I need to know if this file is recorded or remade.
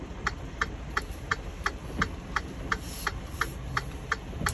recorded